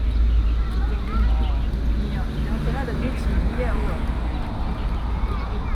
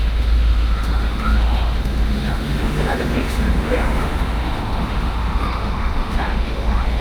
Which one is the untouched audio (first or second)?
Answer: first